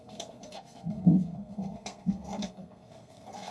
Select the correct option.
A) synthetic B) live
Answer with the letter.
A